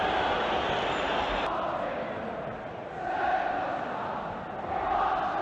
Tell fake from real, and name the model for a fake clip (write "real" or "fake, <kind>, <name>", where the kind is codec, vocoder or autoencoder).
real